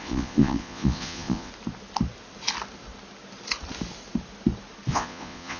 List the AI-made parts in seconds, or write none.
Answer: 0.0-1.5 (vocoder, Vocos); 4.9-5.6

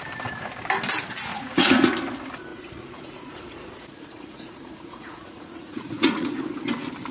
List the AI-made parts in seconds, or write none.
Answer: 1.3-1.9 (vocoder, Vocos); 2.5-6.4

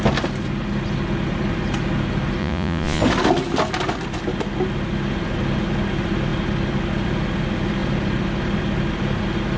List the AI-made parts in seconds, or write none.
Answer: 2.4-3.0 (vocoder, Vocos)

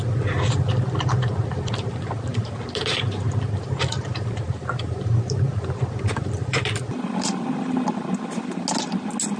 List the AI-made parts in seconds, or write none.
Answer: none